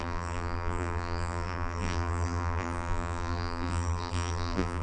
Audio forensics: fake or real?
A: fake